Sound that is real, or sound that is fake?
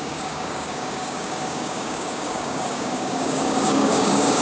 fake